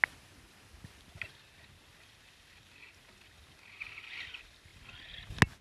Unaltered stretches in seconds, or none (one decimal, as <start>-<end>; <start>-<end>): 0.0-5.6